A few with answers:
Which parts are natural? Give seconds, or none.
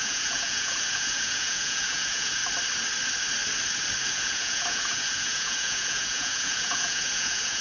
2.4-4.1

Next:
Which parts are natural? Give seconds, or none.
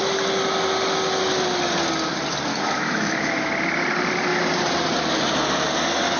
0.0-2.5; 3.5-6.2